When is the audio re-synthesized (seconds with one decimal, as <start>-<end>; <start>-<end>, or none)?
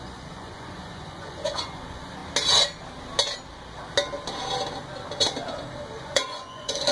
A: 0.0-2.2; 6.0-6.9